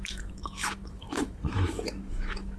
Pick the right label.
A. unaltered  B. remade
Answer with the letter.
B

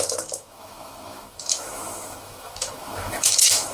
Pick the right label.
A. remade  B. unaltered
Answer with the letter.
A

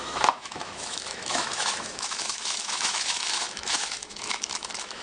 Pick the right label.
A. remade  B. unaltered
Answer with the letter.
A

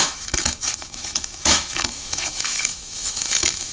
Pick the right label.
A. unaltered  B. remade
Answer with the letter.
B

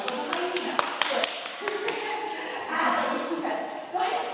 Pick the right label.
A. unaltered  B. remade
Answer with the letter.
A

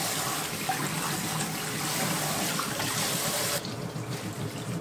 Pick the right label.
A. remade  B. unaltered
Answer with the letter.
B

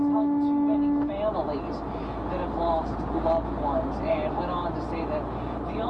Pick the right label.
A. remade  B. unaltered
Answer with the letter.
B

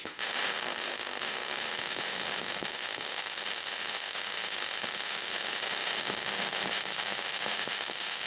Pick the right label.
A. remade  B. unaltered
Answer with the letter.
A